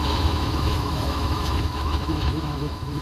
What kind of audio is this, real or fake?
fake